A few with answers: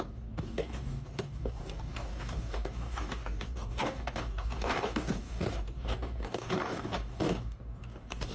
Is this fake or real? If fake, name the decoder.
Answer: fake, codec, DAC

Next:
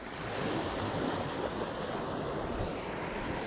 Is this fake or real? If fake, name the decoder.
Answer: real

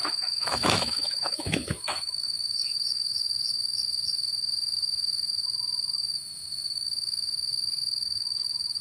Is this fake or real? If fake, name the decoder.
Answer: fake, autoencoder, DAC-VAE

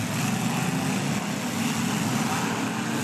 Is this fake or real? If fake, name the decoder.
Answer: real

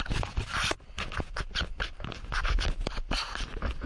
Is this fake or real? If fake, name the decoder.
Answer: real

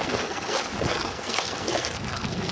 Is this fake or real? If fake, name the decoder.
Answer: fake, codec, SNAC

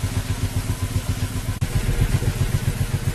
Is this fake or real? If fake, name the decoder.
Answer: real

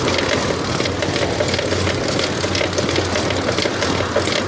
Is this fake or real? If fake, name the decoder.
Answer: real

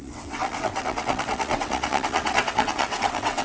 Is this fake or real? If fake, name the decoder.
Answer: fake, vocoder, WaveNeXt